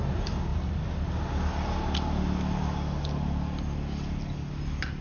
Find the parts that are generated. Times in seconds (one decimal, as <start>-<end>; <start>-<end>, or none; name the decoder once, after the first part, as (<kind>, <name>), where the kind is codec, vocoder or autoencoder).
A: none